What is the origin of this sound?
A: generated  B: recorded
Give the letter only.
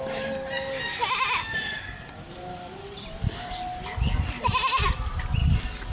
B